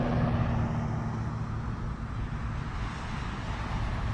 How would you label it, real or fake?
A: real